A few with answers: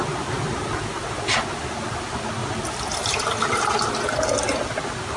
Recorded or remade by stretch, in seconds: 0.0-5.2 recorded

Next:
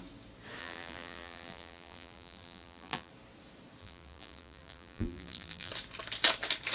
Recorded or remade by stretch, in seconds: 0.0-0.6 recorded; 0.6-3.1 remade; 3.1-3.8 recorded; 3.8-5.7 remade; 5.7-6.7 recorded

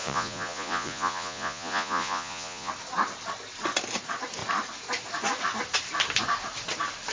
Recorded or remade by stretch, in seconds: 0.0-2.7 remade; 2.7-7.1 recorded

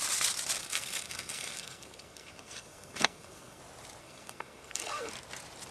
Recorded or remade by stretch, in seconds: 0.0-0.6 recorded; 0.6-3.6 remade; 3.6-4.0 recorded; 4.0-5.1 remade; 5.1-5.7 recorded

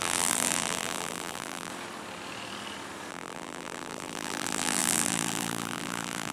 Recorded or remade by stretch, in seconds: 0.0-1.7 remade; 1.7-3.1 recorded; 3.1-6.3 remade